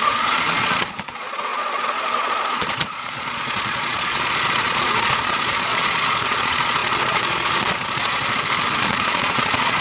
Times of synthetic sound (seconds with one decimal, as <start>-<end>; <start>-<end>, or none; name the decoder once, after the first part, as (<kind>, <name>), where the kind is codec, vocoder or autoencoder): 0.0-8.2 (vocoder, Vocos); 8.8-9.8